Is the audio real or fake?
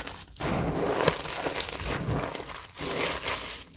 real